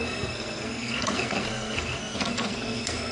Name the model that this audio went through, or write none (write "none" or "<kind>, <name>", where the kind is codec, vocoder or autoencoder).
codec, SNAC